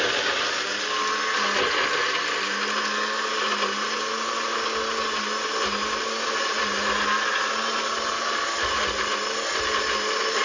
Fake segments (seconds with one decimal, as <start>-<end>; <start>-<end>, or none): none